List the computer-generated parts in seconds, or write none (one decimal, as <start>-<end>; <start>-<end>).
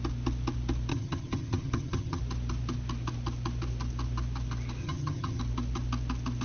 0.9-2.2; 4.8-5.4